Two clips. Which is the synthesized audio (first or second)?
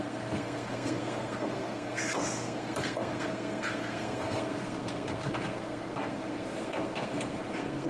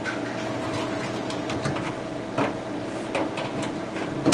first